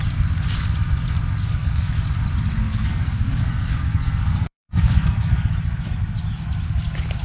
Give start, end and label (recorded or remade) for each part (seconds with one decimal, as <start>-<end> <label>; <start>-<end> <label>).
0.0-1.4 recorded; 1.4-1.9 remade; 1.9-2.6 recorded; 2.6-5.5 remade; 5.5-7.2 recorded